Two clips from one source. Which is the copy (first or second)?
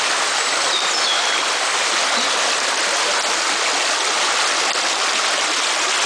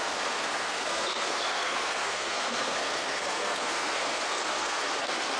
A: second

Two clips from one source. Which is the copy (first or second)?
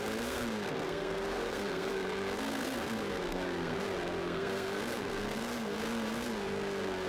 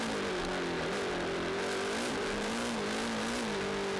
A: first